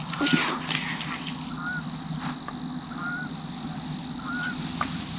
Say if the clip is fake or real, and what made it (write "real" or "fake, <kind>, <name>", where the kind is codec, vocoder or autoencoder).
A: real